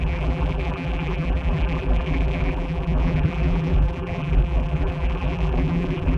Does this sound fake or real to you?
fake